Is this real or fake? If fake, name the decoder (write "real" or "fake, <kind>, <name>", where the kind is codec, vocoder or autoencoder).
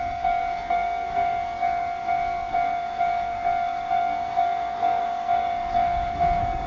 fake, codec, SNAC